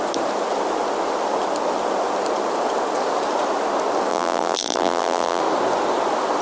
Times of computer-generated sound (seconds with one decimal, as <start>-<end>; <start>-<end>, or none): 4.1-5.4